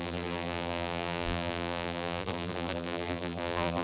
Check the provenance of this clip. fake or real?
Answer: fake